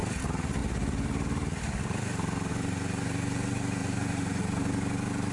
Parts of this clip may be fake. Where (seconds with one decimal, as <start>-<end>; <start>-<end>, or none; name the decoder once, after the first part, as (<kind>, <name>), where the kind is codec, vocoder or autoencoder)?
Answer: 0.6-2.5 (vocoder, BigVGAN v2)